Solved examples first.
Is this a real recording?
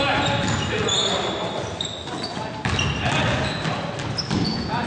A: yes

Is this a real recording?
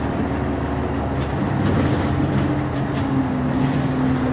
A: yes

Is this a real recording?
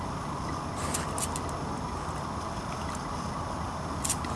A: yes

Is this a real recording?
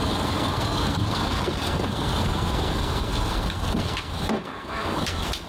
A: no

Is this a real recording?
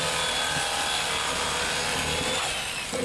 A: yes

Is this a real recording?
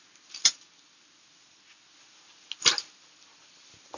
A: yes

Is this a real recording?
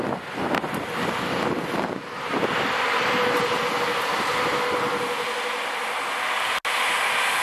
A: yes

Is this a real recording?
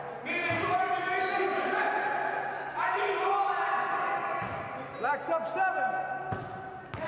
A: yes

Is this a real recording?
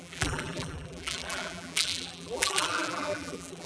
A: no